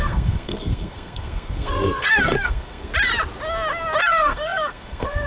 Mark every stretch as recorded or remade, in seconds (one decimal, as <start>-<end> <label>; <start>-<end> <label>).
0.0-2.9 remade; 2.9-4.1 recorded; 4.1-5.3 remade